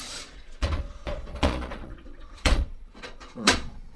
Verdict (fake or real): fake